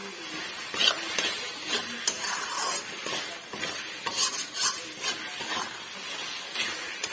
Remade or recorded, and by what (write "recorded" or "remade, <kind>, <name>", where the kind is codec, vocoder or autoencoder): recorded